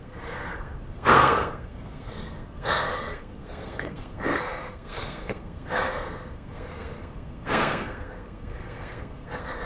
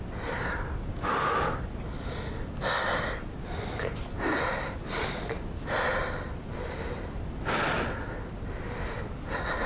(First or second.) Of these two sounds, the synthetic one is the first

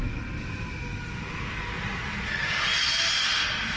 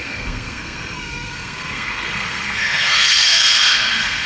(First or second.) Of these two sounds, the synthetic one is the second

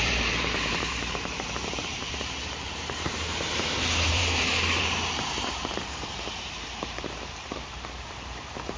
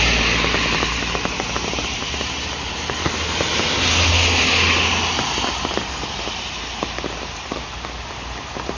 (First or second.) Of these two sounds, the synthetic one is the first